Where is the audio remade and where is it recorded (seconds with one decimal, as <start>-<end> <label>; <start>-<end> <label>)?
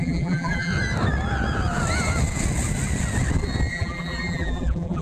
0.0-0.7 remade; 0.7-3.7 recorded; 3.7-5.0 remade